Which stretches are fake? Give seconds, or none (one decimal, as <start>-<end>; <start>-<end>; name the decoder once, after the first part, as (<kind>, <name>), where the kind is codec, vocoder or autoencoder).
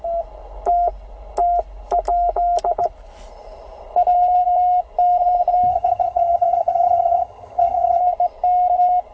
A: 5.7-8.0 (vocoder, HiFi-GAN)